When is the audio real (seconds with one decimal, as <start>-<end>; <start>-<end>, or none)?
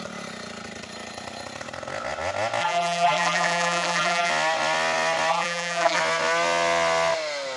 0.0-2.6; 4.3-5.3; 6.0-7.6